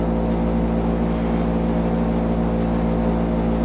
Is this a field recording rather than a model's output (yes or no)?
yes